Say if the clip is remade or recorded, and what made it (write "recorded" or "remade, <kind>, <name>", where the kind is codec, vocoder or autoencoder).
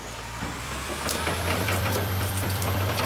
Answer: remade, vocoder, BigVGAN v2